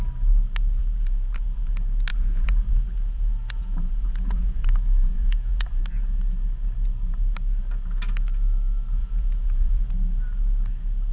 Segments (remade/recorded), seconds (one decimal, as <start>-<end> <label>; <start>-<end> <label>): 0.0-0.8 recorded; 0.8-1.7 remade; 1.7-2.1 recorded; 2.1-5.8 remade; 5.8-9.0 recorded; 9.0-9.9 remade; 9.9-11.1 recorded